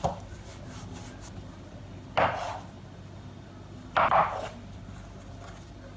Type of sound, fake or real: real